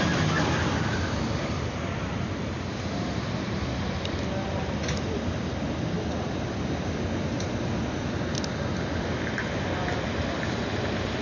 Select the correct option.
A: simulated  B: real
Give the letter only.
B